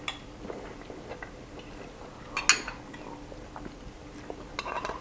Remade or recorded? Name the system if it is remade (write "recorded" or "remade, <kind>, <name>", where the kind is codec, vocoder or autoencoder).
recorded